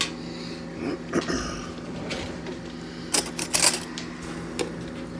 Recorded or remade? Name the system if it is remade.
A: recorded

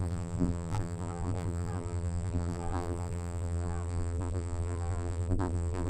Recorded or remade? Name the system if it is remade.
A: remade, vocoder, BigVGAN v2